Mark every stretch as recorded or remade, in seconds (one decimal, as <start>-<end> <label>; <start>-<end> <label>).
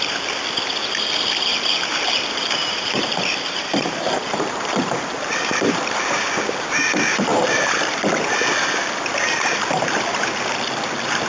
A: 0.0-1.5 recorded; 1.5-6.0 remade; 6.0-11.3 recorded